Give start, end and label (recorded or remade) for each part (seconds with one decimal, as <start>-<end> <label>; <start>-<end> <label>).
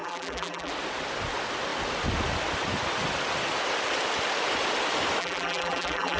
0.0-0.7 remade; 0.7-5.2 recorded; 5.2-6.2 remade